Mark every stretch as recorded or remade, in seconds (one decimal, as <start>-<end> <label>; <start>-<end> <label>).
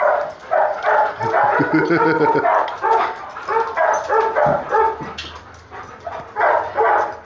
0.0-7.3 recorded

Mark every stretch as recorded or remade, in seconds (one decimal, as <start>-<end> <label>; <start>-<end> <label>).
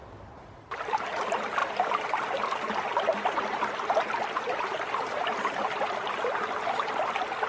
0.0-7.5 recorded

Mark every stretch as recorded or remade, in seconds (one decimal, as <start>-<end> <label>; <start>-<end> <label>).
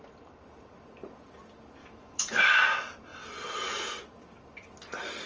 0.0-1.8 recorded; 1.8-2.6 remade; 2.6-5.3 recorded